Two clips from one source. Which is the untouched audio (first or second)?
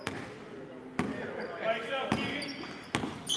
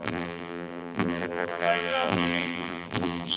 first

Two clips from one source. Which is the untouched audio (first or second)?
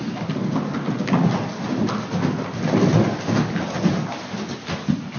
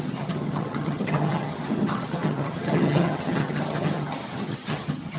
first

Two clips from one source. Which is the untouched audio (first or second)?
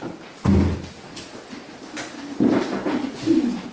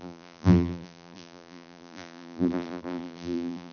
first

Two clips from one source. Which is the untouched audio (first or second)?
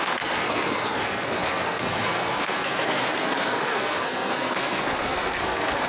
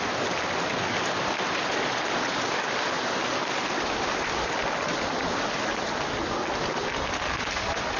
second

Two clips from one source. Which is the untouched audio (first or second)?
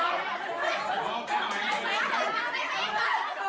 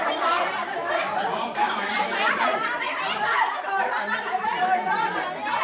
first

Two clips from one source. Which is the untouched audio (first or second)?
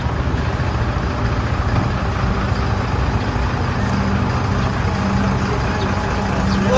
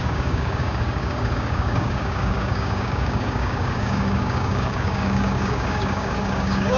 first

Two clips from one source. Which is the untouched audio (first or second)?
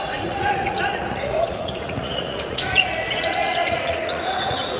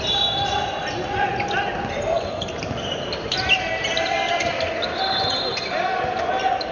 second